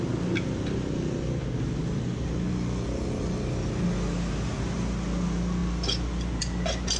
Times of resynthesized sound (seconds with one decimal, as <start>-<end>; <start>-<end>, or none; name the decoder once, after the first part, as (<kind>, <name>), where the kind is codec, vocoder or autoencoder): none